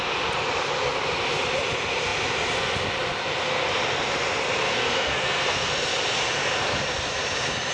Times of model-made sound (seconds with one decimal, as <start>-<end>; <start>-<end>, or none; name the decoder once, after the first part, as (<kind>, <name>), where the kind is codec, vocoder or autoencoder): 4.6-5.7 (codec, SNAC)